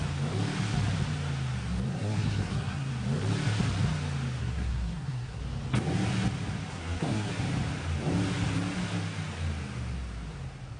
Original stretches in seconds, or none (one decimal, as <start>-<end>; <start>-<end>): 0.0-1.9; 2.9-4.4; 5.4-6.7; 7.3-10.8